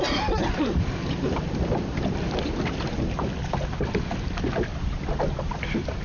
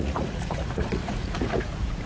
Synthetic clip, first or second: second